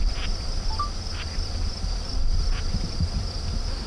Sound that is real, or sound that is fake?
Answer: real